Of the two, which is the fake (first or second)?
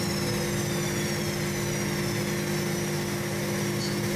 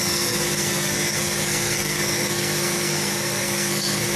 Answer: second